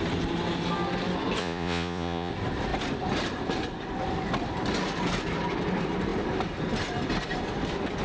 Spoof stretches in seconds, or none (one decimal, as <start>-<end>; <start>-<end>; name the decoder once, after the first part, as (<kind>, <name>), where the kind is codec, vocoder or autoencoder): 1.4-2.3 (vocoder, Vocos)